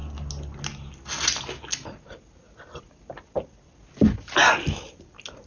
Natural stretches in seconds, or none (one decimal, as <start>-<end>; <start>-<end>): 0.0-5.5